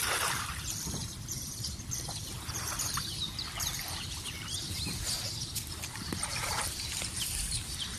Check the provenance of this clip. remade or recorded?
remade